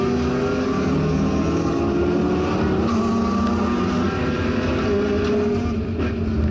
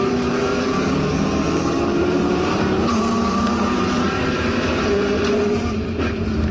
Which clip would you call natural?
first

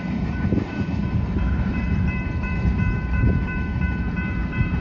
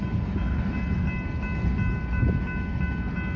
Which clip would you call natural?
second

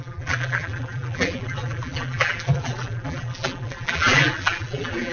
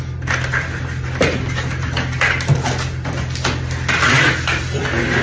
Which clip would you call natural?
second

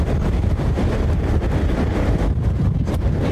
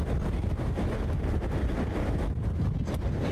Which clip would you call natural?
second